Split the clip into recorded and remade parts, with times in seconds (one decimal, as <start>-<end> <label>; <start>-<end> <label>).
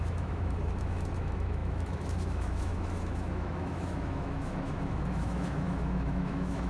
0.0-6.7 remade